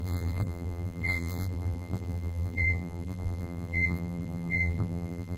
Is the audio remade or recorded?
remade